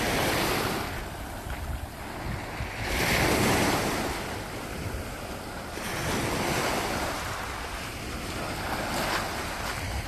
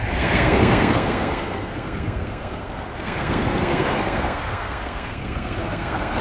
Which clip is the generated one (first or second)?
second